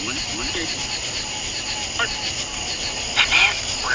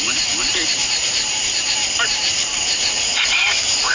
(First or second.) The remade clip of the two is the second